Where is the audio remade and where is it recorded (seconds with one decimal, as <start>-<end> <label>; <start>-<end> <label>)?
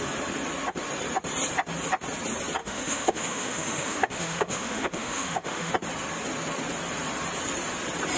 0.0-2.6 recorded; 2.6-5.7 remade; 5.7-8.2 recorded